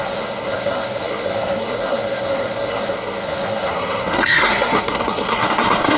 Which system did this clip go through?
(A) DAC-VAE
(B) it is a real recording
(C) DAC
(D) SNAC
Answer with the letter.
D